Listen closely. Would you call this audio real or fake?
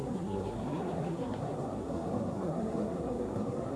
fake